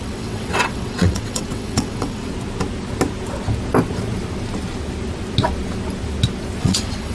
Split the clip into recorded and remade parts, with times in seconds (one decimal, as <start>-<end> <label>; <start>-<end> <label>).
0.0-2.3 remade; 2.3-6.6 recorded; 6.6-7.1 remade